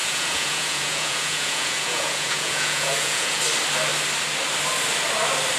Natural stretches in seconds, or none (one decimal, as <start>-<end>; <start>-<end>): 3.4-5.6